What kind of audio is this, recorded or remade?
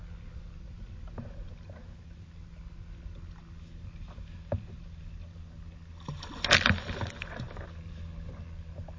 recorded